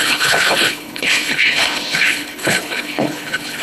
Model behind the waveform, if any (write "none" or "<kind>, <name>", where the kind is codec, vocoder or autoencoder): codec, HILCodec